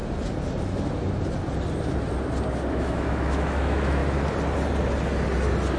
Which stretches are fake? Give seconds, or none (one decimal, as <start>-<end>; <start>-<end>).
2.7-4.0